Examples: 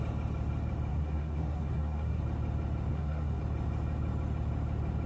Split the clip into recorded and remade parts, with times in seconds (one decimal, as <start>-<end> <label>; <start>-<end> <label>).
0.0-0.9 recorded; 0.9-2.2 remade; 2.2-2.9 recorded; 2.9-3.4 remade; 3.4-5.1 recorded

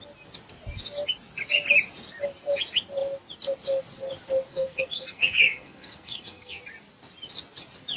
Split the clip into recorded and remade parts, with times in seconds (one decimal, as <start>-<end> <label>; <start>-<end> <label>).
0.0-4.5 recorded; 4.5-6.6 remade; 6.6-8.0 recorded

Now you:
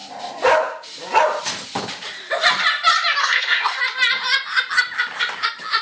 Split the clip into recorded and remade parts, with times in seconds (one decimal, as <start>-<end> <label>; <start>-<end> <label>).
0.0-3.2 recorded; 3.2-3.8 remade; 3.8-5.8 recorded

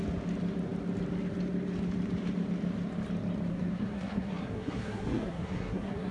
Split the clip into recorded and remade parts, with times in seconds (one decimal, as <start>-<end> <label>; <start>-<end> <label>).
0.0-3.5 recorded; 3.5-6.1 remade

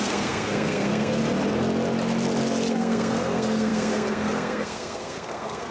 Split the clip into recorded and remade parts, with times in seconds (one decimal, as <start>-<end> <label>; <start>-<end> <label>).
0.0-1.2 remade; 1.2-2.7 recorded; 2.7-5.7 remade

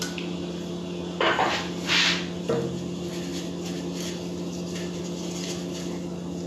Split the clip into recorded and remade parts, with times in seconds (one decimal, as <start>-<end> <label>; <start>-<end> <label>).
0.0-6.5 recorded